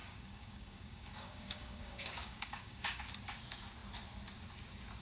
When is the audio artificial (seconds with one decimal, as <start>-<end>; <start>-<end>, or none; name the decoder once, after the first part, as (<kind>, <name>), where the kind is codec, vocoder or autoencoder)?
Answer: 0.0-3.0 (codec, DAC)